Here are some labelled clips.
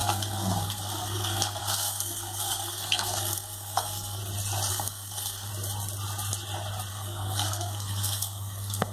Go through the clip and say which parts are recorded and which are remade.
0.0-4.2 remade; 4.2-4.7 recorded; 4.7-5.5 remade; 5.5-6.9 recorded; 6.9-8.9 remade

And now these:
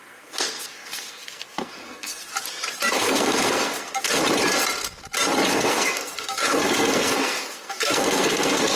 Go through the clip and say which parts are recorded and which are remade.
0.0-2.3 remade; 2.3-2.9 recorded; 2.9-4.2 remade; 4.2-5.5 recorded; 5.5-8.8 remade

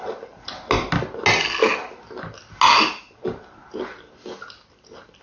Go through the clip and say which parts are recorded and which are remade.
0.0-5.2 recorded

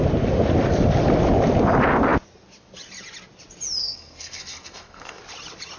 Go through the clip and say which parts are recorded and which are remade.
0.0-3.8 recorded; 3.8-5.2 remade; 5.2-5.8 recorded

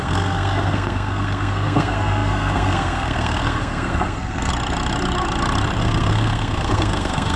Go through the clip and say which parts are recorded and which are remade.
0.0-4.5 remade; 4.5-5.8 recorded; 5.8-7.4 remade

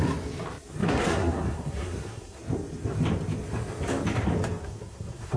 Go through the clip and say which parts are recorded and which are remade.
0.0-0.8 recorded; 0.8-2.4 remade; 2.4-4.6 recorded; 4.6-5.4 remade

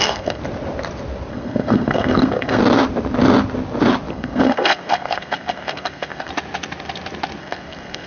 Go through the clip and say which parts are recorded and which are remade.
0.0-0.4 remade; 0.4-1.3 recorded; 1.3-2.6 remade; 2.6-4.1 recorded; 4.1-6.3 remade; 6.3-7.4 recorded; 7.4-8.1 remade